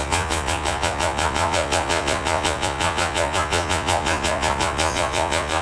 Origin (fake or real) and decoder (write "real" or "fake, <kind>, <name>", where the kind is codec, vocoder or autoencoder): fake, vocoder, Vocos